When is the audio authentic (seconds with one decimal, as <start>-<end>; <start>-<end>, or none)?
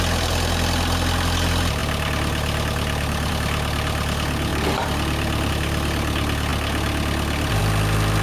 0.0-4.5; 5.5-8.2